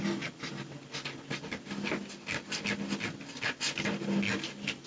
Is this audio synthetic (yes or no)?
no